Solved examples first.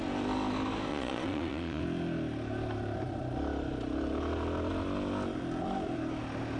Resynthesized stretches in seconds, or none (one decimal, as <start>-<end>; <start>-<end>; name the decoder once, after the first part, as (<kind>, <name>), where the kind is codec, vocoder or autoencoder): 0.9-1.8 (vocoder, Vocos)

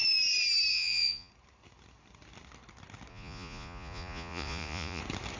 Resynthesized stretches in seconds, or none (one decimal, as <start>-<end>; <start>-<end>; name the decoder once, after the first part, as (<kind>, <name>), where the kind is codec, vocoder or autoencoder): 0.7-1.3 (vocoder, Vocos); 3.1-5.0

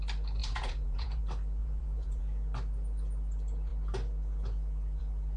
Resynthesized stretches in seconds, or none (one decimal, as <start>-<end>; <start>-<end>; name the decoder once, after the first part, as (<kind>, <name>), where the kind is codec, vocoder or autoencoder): 0.4-1.2 (vocoder, Vocos); 1.6-2.2

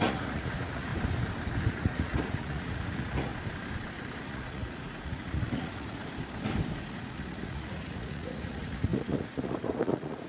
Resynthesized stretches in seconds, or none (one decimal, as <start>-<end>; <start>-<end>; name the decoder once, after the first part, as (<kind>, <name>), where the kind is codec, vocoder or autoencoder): 0.0-0.9 (vocoder, Vocos); 1.7-3.3; 4.2-6.0; 6.9-10.3